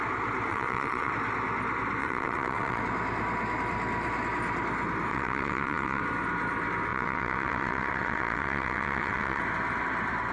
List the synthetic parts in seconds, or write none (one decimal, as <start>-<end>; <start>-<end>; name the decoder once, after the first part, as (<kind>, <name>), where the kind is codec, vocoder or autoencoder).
0.5-1.1 (vocoder, WaveNeXt); 2.0-2.8; 5.1-6.0; 6.9-9.4